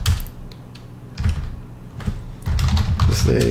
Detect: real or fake real